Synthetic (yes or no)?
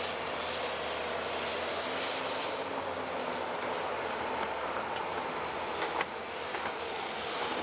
no